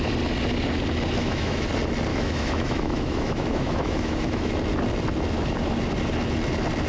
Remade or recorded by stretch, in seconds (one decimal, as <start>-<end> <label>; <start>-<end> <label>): 0.0-1.2 recorded; 1.2-1.7 remade; 1.7-2.1 recorded; 2.1-4.5 remade; 4.5-6.9 recorded